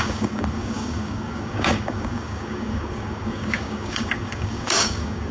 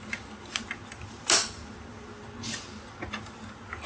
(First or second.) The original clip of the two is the second